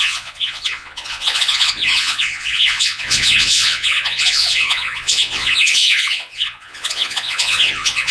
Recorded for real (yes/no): no